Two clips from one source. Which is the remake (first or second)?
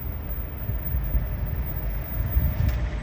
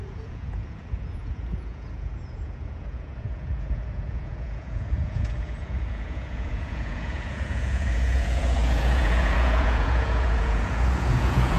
second